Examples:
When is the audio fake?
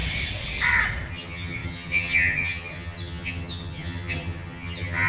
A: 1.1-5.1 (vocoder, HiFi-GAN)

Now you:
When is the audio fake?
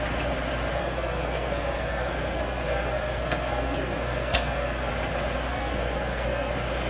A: 0.8-4.9 (codec, SNAC); 5.5-6.5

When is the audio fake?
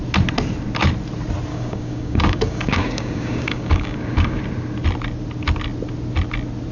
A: 1.5-4.4 (codec, DAC)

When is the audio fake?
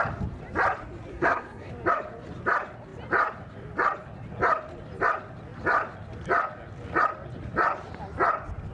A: 1.1-1.7 (codec, SNAC)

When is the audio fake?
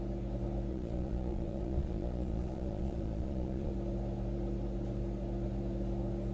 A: 0.7-3.7 (vocoder, Vocos)